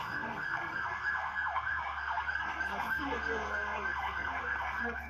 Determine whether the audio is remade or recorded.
remade